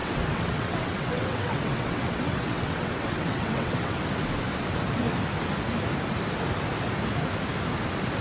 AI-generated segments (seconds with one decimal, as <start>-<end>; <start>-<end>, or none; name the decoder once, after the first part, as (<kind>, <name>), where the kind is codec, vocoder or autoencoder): 0.0-4.0 (vocoder, WaveNeXt)